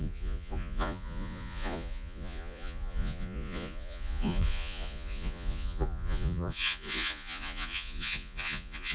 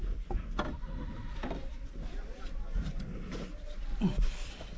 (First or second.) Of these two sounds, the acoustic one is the second